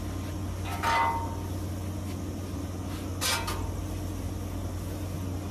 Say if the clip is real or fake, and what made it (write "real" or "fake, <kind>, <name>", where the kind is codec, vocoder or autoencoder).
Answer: real